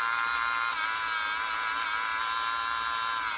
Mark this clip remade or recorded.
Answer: recorded